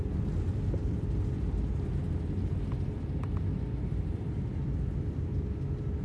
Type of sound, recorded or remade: recorded